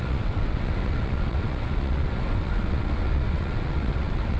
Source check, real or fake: fake